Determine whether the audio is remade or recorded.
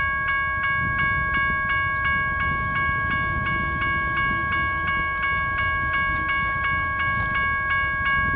recorded